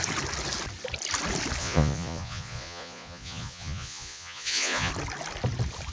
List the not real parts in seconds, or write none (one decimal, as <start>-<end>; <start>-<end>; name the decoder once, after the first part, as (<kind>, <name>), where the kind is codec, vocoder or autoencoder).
1.6-4.9 (vocoder, Vocos)